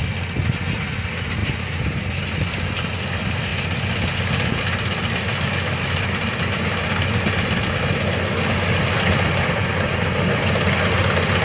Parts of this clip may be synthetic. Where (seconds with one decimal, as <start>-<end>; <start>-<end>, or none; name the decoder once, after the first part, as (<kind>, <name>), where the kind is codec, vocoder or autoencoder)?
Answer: none

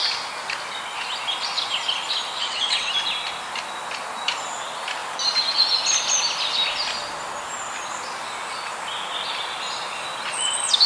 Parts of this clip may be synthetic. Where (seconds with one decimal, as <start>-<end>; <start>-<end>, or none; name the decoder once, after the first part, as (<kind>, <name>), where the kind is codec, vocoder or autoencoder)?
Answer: 2.4-2.9 (vocoder, WaveNeXt)

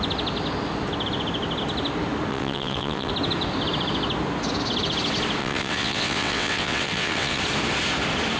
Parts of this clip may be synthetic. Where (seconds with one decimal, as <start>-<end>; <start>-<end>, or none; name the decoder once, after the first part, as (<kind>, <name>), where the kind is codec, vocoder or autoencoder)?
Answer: 2.3-3.1 (vocoder, WaveNeXt); 5.4-7.4

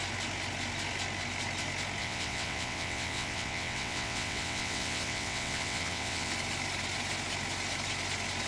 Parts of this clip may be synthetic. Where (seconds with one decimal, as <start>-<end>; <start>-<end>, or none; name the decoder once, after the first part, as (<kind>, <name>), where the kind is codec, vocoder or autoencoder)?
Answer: 2.0-6.3 (vocoder, WaveNeXt)

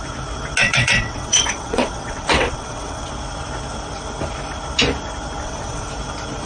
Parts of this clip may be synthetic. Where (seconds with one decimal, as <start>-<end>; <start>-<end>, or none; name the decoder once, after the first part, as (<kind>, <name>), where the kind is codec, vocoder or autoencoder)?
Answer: 0.6-3.1 (vocoder, WaveNeXt); 5.4-5.9

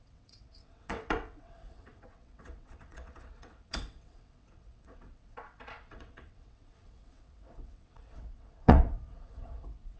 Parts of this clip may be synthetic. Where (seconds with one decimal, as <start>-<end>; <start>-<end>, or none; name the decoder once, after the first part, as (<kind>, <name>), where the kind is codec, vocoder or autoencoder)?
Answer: 0.0-10.0 (vocoder, WaveNeXt)

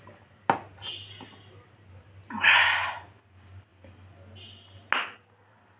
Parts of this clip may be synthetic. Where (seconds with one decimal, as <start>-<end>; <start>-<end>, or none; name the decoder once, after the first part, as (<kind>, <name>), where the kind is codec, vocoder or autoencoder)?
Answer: none

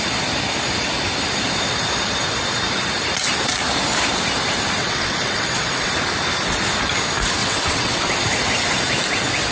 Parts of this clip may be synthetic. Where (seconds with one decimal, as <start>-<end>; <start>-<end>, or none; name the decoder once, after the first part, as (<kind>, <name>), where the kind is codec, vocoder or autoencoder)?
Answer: 4.8-5.9 (vocoder, WaveNeXt); 7.4-8.0